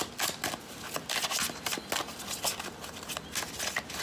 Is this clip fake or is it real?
real